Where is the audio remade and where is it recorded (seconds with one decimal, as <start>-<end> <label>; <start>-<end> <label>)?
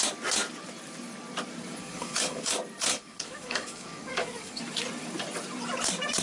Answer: 0.0-1.8 recorded; 1.8-2.4 remade; 2.4-2.9 recorded; 2.9-4.6 remade; 4.6-6.2 recorded